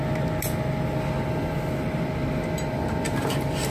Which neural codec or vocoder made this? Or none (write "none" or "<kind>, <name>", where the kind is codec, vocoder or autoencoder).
none